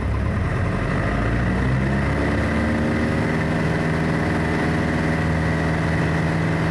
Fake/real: real